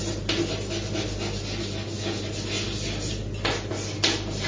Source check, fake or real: real